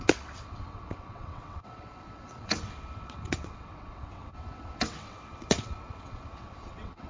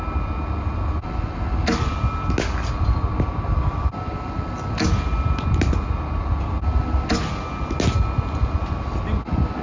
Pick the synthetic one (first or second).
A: first